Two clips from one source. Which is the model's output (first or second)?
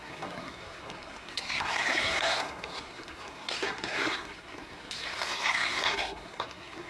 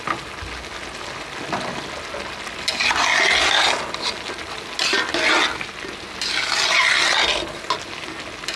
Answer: first